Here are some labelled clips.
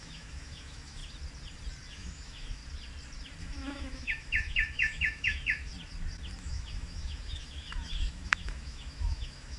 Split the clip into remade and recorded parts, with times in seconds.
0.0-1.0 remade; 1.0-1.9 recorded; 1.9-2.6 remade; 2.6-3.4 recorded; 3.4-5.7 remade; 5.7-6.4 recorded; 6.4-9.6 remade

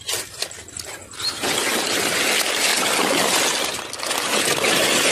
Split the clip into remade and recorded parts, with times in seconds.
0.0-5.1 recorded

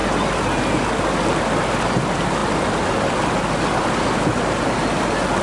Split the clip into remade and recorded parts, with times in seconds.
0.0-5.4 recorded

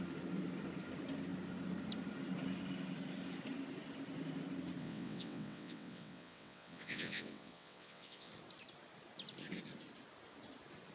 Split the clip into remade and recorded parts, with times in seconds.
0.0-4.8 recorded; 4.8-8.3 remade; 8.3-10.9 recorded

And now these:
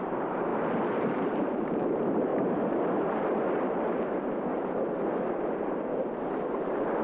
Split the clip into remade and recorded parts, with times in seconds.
0.0-0.5 remade; 0.5-1.0 recorded; 1.0-2.3 remade; 2.3-5.5 recorded; 5.5-7.0 remade